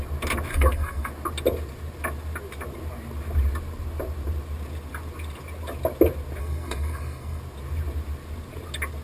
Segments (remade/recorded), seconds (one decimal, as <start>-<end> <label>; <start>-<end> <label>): 0.0-0.5 recorded; 0.5-1.1 remade; 1.1-6.4 recorded; 6.4-7.4 remade; 7.4-9.0 recorded